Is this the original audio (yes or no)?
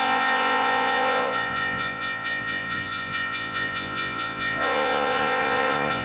no